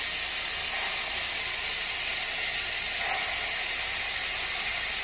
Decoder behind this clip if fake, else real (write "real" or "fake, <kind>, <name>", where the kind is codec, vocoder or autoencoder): real